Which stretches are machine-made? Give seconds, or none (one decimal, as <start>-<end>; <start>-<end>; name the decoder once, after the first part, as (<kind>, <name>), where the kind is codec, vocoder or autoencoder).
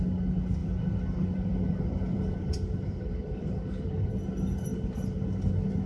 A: 0.6-4.1 (vocoder, BigVGAN v2); 4.7-5.4